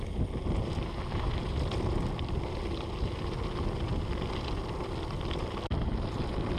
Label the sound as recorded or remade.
recorded